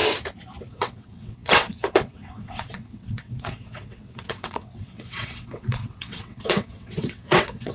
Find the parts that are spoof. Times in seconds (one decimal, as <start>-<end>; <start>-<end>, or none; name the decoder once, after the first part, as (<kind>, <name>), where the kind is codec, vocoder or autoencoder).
0.7-7.7 (vocoder, WaveNeXt)